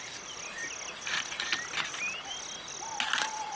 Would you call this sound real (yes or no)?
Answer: yes